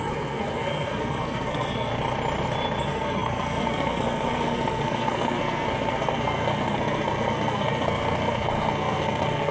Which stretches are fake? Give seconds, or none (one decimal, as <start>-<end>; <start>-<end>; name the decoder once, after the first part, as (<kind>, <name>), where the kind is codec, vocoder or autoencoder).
0.0-1.9 (codec, SNAC); 2.8-9.5

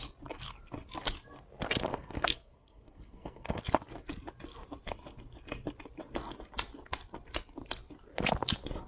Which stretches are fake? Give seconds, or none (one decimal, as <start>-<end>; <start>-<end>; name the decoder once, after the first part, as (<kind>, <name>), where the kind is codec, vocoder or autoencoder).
1.9-3.6 (codec, SNAC)

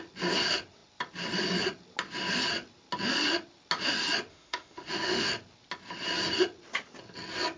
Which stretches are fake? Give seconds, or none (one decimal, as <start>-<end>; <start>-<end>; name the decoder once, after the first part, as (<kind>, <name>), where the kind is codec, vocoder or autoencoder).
4.3-5.3 (autoencoder, DAC-VAE)

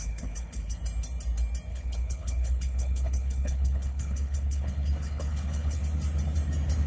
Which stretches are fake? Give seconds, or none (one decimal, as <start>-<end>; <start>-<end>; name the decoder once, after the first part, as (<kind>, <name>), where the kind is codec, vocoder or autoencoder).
0.0-0.8 (codec, HILCodec); 1.7-5.8

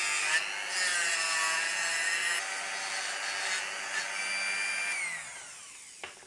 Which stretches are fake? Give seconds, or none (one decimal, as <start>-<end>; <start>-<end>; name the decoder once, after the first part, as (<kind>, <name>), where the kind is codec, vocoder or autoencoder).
none

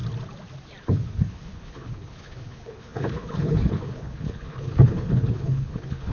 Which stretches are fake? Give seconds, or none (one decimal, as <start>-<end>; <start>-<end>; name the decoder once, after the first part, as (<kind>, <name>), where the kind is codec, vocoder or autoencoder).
0.8-6.1 (codec, HILCodec)

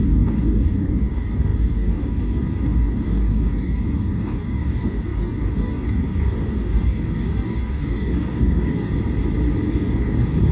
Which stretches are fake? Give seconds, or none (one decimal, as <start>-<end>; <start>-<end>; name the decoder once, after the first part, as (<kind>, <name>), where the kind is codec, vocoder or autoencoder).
0.0-8.9 (codec, DAC); 9.7-10.5